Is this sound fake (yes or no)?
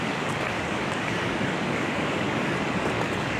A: yes